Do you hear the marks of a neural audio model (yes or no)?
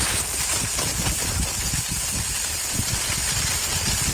no